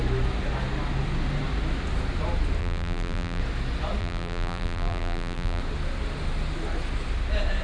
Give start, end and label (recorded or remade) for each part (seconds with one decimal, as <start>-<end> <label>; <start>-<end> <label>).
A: 0.0-2.6 recorded; 2.6-3.4 remade; 3.4-4.0 recorded; 4.0-5.6 remade; 5.6-7.6 recorded

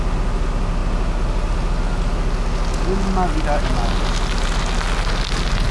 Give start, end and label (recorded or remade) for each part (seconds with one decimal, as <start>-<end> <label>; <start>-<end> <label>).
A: 0.0-5.7 recorded

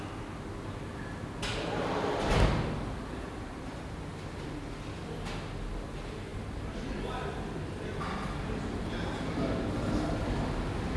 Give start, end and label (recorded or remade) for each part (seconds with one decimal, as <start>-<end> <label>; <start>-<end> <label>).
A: 0.0-6.3 recorded; 6.3-7.0 remade; 7.0-11.0 recorded

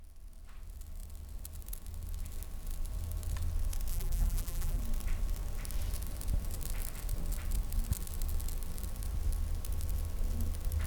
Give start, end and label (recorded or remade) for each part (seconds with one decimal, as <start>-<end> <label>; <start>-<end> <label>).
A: 0.0-3.9 recorded; 3.9-4.8 remade; 4.8-10.9 recorded

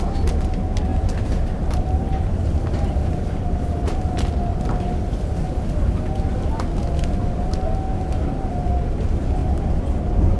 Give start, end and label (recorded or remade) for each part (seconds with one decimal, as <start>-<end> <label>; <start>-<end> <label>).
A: 0.0-0.9 recorded; 0.9-5.3 remade; 5.3-9.4 recorded; 9.4-9.9 remade; 9.9-10.4 recorded

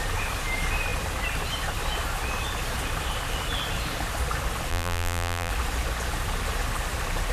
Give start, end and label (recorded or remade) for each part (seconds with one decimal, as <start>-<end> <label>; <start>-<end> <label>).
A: 0.0-4.7 recorded; 4.7-5.5 remade; 5.5-7.3 recorded

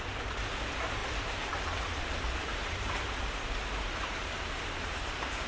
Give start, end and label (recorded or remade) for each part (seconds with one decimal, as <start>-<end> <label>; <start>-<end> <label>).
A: 0.0-1.0 recorded; 1.0-4.3 remade; 4.3-5.5 recorded

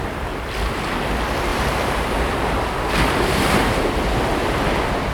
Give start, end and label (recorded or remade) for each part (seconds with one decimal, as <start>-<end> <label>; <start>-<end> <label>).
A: 0.0-1.5 recorded; 1.5-3.8 remade; 3.8-5.1 recorded